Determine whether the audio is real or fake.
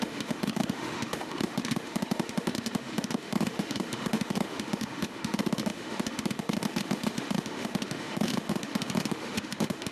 fake